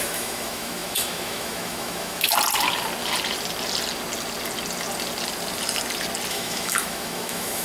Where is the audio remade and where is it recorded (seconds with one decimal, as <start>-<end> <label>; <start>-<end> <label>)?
0.0-2.3 remade; 2.3-6.3 recorded; 6.3-7.6 remade